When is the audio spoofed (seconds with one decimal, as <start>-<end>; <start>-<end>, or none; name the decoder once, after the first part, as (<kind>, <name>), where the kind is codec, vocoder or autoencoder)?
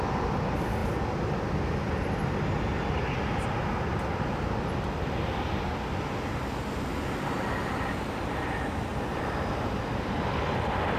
8.9-9.8 (vocoder, BigVGAN v2)